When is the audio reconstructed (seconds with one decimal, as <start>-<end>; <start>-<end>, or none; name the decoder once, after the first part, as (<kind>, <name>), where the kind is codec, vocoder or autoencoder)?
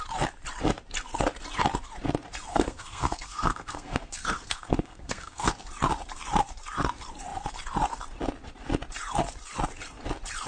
2.5-5.5 (codec, SNAC)